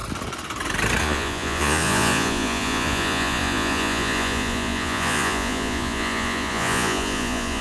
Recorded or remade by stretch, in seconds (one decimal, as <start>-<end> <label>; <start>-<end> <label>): 0.0-1.0 recorded; 1.0-7.6 remade